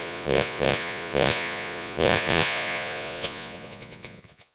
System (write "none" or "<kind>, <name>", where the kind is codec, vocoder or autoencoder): vocoder, Vocos